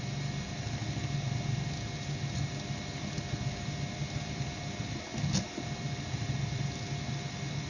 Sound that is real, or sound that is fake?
real